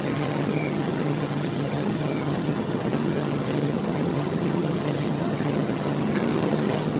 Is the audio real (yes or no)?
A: no